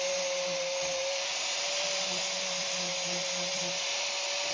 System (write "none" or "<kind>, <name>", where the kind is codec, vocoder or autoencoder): vocoder, BigVGAN v2